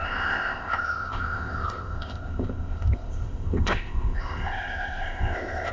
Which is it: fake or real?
fake